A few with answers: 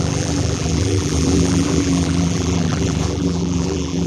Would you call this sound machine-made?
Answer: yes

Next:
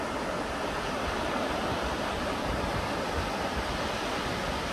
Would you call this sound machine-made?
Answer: no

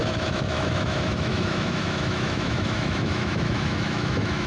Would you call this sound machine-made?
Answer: yes